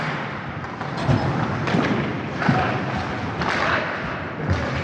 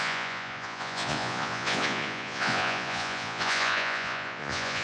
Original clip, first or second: first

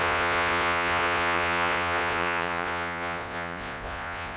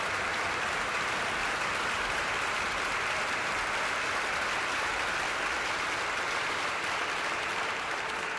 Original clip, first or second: second